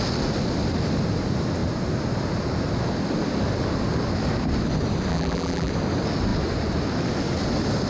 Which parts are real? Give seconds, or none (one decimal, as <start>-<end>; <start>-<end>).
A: 0.0-5.1; 5.7-7.9